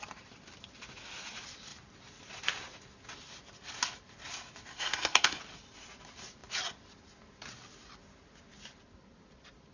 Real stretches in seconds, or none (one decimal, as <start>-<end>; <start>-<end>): 0.0-4.7; 5.4-9.7